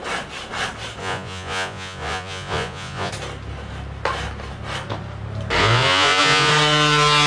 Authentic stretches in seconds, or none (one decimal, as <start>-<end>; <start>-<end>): 0.0-1.0; 3.1-5.6; 6.5-7.3